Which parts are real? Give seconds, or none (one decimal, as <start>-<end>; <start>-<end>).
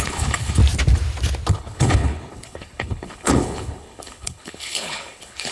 0.6-1.5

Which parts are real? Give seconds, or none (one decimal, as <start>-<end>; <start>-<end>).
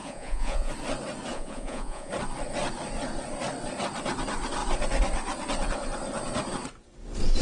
0.7-1.3; 2.1-7.4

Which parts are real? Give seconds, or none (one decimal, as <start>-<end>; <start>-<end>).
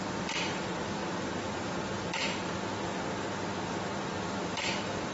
1.0-4.1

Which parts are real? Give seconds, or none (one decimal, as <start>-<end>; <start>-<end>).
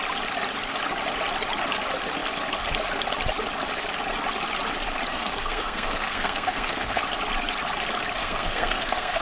0.0-5.1; 7.0-8.2